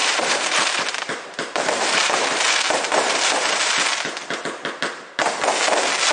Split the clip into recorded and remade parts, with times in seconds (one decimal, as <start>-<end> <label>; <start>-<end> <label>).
0.0-3.7 remade; 3.7-6.1 recorded